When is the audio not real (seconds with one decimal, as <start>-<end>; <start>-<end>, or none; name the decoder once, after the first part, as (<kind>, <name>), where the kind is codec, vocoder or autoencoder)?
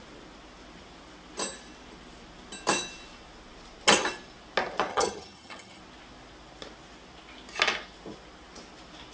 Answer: 4.9-5.8 (vocoder, HiFi-GAN)